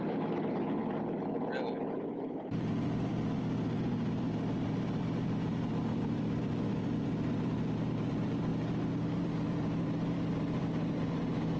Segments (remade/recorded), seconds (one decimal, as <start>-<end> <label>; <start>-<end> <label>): 0.0-0.8 remade; 0.8-1.9 recorded; 1.9-8.5 remade; 8.5-9.2 recorded; 9.2-11.6 remade